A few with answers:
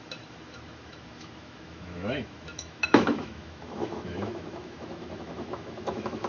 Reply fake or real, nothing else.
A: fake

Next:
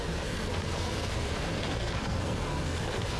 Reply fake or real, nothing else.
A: fake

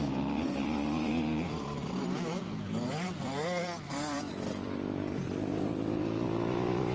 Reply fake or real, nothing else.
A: fake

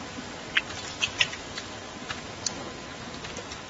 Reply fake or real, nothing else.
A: real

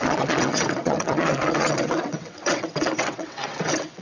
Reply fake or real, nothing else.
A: fake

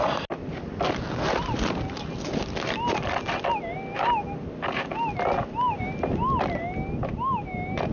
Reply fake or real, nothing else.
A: real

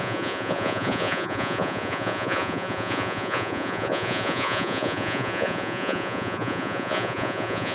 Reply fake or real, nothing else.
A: fake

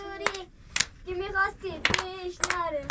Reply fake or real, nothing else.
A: real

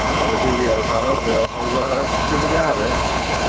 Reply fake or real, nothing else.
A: fake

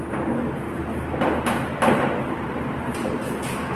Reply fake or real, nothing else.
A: real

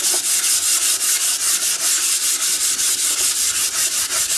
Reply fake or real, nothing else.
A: real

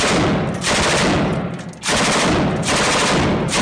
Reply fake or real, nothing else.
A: real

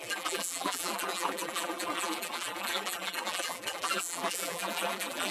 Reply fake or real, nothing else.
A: fake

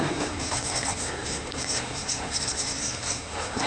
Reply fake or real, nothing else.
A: fake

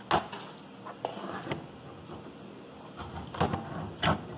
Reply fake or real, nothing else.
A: real